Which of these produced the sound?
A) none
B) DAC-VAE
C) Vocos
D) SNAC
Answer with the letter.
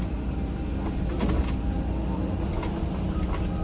A